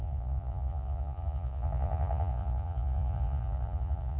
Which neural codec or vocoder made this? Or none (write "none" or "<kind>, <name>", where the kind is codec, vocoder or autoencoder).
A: vocoder, Vocos